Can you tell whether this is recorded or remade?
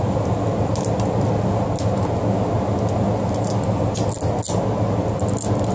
recorded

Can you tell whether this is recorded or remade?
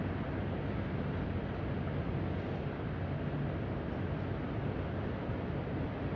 recorded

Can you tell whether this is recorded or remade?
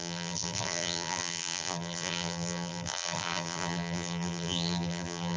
remade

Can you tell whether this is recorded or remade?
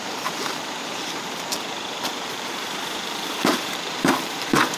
remade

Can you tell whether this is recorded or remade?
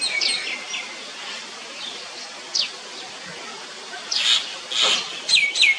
recorded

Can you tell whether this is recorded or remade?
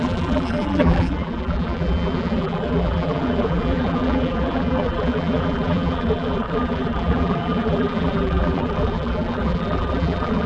remade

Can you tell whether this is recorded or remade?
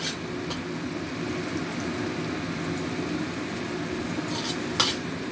recorded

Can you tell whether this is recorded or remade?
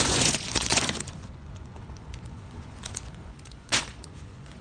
remade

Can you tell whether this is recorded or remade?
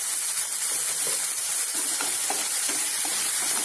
recorded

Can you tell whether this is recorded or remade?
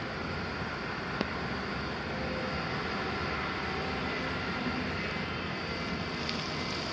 recorded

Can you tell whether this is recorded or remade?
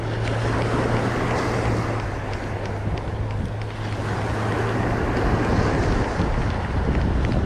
recorded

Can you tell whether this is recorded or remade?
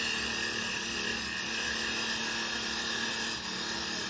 recorded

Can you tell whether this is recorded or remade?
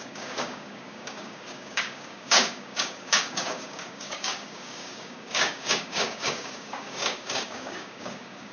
remade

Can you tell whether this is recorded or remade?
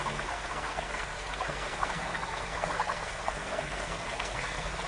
remade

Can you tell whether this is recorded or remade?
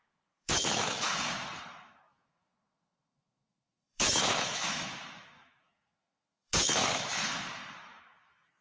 remade